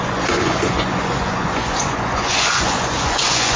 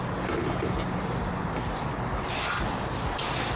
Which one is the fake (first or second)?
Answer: first